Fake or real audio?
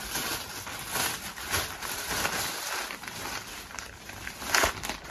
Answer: real